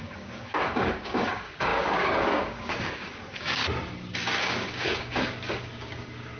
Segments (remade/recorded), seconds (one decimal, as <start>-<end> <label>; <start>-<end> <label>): 0.0-3.6 remade; 3.6-4.4 recorded; 4.4-6.4 remade